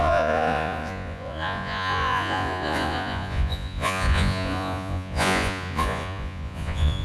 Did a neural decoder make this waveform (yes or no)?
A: yes